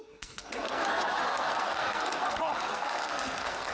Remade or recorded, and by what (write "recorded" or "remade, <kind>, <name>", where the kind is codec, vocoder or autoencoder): remade, codec, SNAC